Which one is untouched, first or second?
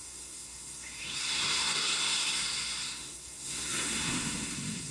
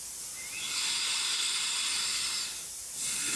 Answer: second